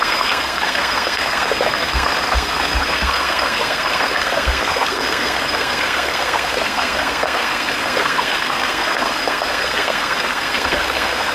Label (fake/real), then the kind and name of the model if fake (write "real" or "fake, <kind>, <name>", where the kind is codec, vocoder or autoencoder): fake, codec, SNAC